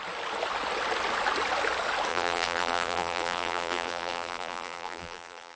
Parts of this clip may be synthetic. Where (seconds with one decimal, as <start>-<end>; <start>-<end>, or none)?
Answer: 2.1-5.6